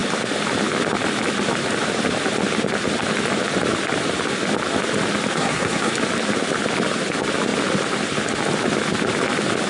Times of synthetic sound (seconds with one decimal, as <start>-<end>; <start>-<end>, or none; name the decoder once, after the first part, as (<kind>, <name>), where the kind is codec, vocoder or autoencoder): 5.3-5.9 (codec, SNAC)